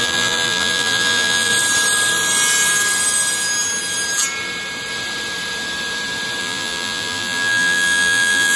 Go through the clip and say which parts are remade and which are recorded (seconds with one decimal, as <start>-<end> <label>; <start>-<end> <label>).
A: 0.0-1.5 remade; 1.5-6.4 recorded; 6.4-8.6 remade